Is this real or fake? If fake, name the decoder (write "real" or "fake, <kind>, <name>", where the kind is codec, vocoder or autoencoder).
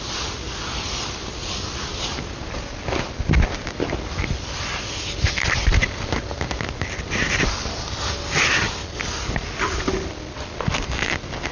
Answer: real